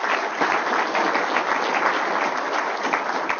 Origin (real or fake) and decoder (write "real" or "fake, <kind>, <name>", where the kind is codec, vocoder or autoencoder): real